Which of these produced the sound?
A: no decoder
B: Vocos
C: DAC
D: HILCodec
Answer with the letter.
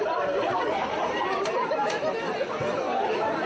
A